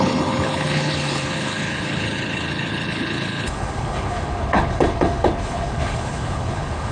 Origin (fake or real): fake